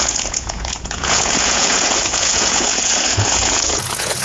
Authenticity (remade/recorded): remade